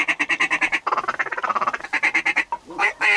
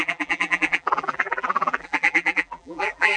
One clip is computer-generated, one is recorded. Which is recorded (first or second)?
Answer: first